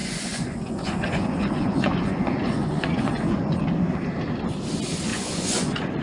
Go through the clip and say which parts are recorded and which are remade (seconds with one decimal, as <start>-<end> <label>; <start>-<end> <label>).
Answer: 0.0-3.6 remade; 3.6-5.1 recorded; 5.1-6.0 remade